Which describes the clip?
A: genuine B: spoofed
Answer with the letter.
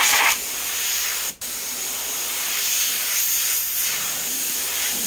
B